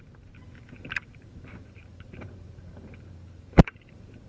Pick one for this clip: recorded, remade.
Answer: remade